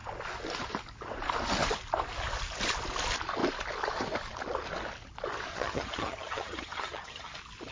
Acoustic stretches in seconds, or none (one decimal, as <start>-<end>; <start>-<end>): 0.0-5.5; 7.3-7.7